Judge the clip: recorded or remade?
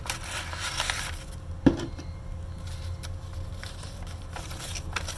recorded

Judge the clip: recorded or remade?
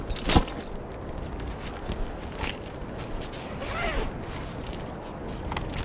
recorded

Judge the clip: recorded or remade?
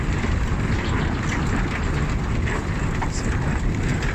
recorded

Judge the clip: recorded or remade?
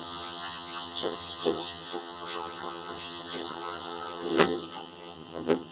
remade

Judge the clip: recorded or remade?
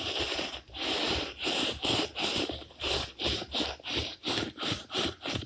remade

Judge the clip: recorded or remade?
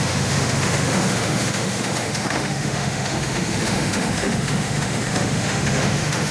remade